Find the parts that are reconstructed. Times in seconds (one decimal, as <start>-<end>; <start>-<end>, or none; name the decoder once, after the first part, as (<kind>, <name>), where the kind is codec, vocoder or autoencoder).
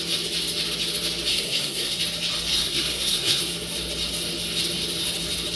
1.3-2.0 (codec, SNAC); 2.5-3.4